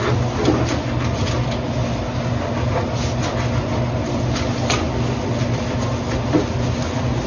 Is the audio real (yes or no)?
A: yes